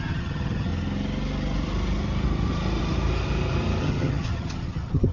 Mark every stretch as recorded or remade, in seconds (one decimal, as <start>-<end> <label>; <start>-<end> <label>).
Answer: 0.0-0.7 remade; 0.7-3.8 recorded; 3.8-5.1 remade

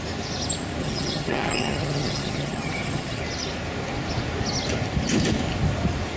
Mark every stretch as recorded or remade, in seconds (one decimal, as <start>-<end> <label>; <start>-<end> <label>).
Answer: 0.0-0.8 recorded; 0.8-3.2 remade; 3.2-6.2 recorded